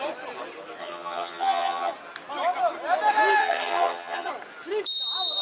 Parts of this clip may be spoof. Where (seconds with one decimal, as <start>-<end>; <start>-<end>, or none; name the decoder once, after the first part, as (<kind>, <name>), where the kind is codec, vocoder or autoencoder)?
0.8-1.9 (vocoder, HiFi-GAN); 3.4-4.3

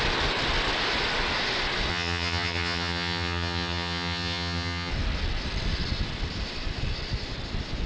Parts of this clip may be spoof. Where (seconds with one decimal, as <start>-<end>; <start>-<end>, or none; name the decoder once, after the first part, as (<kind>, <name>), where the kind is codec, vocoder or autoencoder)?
1.9-4.9 (vocoder, HiFi-GAN)

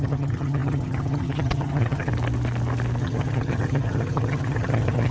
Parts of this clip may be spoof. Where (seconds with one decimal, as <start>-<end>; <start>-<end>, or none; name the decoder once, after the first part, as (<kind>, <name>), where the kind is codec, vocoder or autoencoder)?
0.0-2.1 (vocoder, HiFi-GAN); 3.0-5.1